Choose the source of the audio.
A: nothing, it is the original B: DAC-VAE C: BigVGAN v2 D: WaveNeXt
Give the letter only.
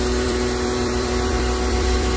C